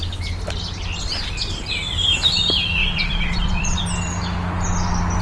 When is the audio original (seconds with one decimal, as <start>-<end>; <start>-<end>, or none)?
0.0-2.8; 3.8-5.2